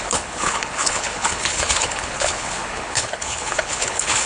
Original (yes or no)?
no